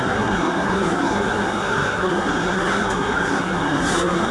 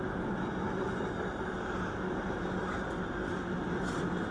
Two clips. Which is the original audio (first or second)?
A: second